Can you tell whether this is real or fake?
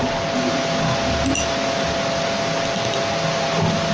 real